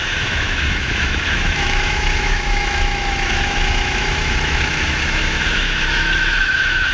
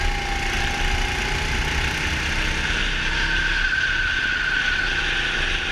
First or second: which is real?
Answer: second